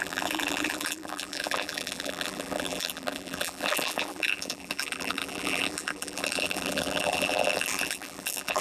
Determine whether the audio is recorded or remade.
remade